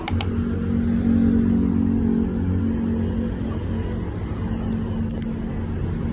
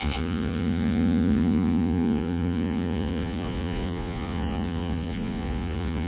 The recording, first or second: first